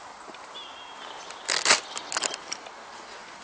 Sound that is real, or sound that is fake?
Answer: real